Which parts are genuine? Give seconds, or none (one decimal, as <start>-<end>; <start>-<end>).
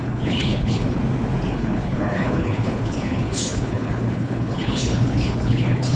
1.0-1.5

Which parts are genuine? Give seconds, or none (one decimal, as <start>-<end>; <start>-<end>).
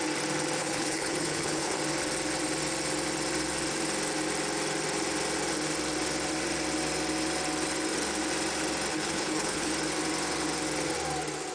0.0-0.6; 1.8-8.9; 9.7-11.5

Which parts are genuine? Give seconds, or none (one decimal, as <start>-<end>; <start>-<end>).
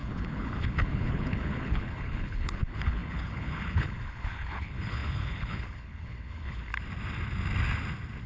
6.7-8.3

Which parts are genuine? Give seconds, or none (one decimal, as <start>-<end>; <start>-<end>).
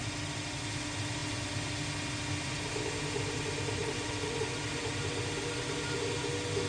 0.0-6.7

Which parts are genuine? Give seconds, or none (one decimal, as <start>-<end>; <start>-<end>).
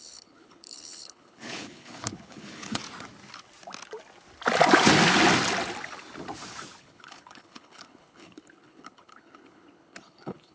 2.8-6.8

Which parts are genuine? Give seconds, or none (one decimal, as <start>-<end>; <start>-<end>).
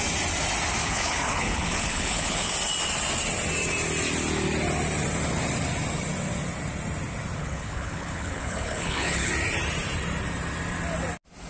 0.0-0.8; 2.5-7.4; 9.3-11.5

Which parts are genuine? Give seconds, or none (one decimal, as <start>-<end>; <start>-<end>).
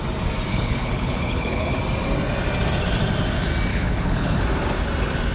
0.0-0.5; 1.8-3.7; 4.4-5.3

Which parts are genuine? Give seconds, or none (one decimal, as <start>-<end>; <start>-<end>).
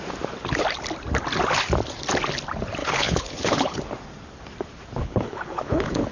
0.0-2.8; 3.8-5.0